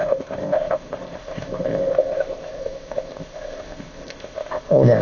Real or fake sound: fake